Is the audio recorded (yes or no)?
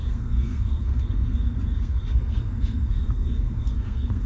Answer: no